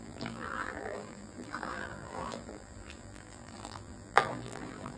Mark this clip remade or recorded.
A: remade